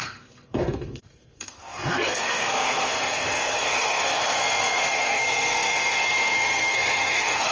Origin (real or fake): fake